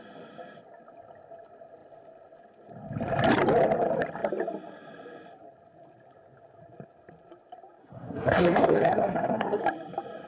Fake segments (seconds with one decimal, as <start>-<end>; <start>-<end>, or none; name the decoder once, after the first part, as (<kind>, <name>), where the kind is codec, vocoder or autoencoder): 7.8-9.6 (codec, SNAC)